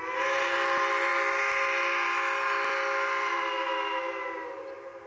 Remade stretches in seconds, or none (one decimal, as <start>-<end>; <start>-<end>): none